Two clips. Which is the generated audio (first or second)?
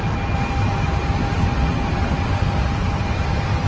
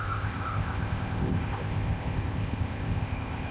second